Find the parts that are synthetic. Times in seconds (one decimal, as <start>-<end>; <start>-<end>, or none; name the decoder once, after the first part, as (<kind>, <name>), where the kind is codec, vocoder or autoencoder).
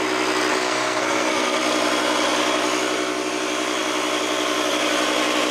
0.5-1.6 (codec, SNAC)